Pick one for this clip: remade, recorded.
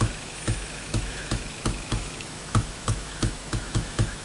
remade